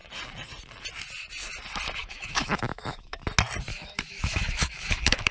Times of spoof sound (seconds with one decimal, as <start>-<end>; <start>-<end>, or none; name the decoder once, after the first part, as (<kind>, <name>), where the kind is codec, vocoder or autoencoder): 2.0-3.2 (autoencoder, DAC-VAE); 3.7-5.3